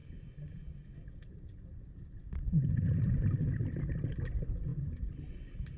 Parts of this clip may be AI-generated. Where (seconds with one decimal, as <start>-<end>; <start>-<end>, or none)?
none